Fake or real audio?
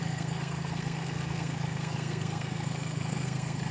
fake